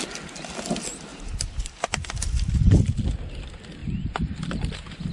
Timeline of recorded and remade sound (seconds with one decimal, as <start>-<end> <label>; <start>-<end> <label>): 0.0-1.1 recorded; 1.1-3.0 remade; 3.0-3.8 recorded; 3.8-5.1 remade